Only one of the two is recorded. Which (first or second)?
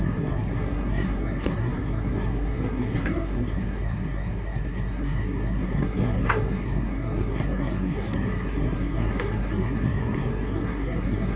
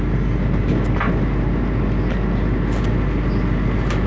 second